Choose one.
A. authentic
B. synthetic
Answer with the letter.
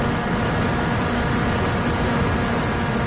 A